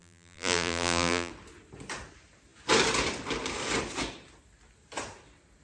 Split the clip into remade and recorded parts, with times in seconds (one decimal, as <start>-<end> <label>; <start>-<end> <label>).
0.0-1.3 remade; 1.3-5.6 recorded